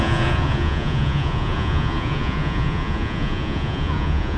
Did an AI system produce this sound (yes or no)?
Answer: yes